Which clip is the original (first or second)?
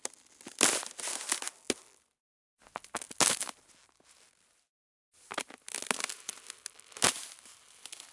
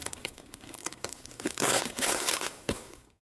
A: first